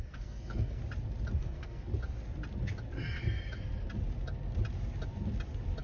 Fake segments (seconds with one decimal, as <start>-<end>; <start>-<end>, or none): 0.0-0.8; 1.4-1.9